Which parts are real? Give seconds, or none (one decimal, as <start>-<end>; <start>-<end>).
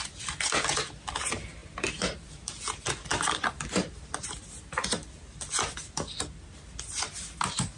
0.0-7.8